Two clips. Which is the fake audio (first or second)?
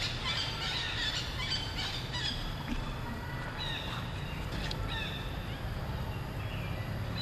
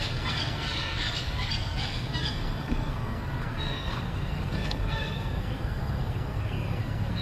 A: second